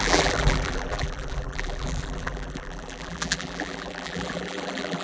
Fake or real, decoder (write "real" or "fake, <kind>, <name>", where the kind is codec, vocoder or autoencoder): fake, vocoder, BigVGAN v2